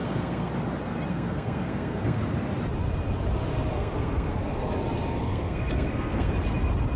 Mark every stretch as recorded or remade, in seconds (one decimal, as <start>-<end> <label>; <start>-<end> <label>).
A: 0.0-0.5 remade; 0.5-1.1 recorded; 1.1-2.2 remade; 2.2-3.7 recorded; 3.7-4.7 remade; 4.7-5.2 recorded; 5.2-6.3 remade; 6.3-7.0 recorded